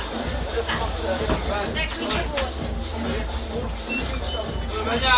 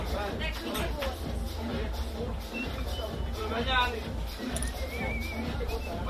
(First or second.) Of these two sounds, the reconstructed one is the second